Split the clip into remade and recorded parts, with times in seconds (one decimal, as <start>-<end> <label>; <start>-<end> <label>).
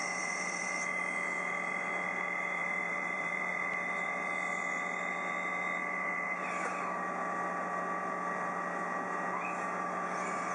0.0-1.0 remade; 1.0-2.6 recorded; 2.6-3.5 remade; 3.5-10.5 recorded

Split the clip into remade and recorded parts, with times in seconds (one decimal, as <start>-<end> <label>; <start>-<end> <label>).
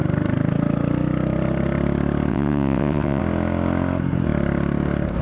0.0-2.3 recorded; 2.3-3.2 remade; 3.2-5.2 recorded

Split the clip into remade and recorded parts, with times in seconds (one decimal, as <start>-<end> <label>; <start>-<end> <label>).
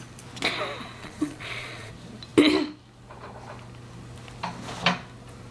0.0-1.0 recorded; 1.0-1.9 remade; 1.9-5.5 recorded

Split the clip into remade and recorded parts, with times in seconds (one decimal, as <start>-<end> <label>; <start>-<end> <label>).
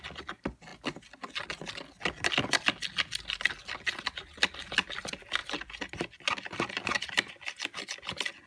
0.0-8.5 recorded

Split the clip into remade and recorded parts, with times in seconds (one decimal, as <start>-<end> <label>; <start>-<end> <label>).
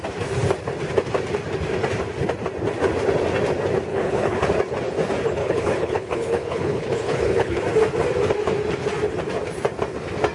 0.0-3.9 recorded; 3.9-4.5 remade; 4.5-5.4 recorded; 5.4-7.6 remade; 7.6-10.3 recorded